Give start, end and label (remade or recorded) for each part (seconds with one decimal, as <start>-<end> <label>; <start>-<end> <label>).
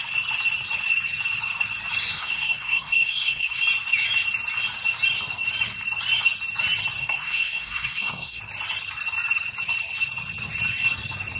0.0-2.1 recorded; 2.1-3.6 remade; 3.6-7.0 recorded; 7.0-8.4 remade; 8.4-11.4 recorded